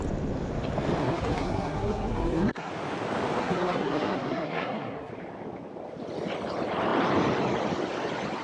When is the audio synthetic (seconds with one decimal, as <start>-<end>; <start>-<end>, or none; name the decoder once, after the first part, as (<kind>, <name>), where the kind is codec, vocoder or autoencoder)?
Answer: 1.0-2.7 (codec, SNAC); 3.4-5.1